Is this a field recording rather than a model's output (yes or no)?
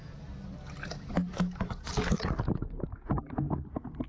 yes